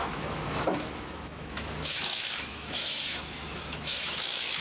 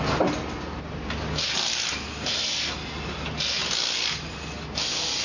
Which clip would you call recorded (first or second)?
second